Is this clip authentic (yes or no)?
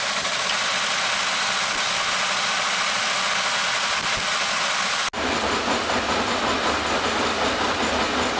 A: yes